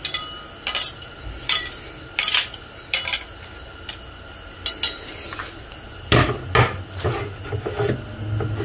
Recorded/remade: recorded